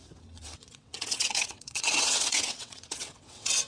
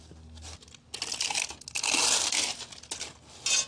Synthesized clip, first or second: first